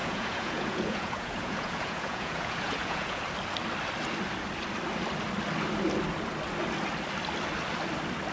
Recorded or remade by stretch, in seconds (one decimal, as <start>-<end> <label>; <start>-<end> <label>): 0.0-3.2 remade; 3.2-8.3 recorded